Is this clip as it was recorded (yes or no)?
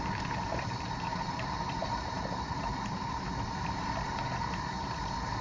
no